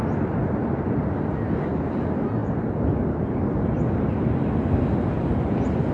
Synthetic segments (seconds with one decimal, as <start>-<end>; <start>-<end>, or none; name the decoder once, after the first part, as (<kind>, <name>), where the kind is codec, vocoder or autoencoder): none